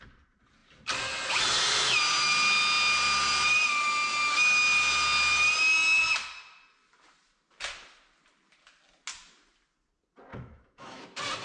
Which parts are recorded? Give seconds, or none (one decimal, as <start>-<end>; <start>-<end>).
0.0-10.3; 11.0-11.4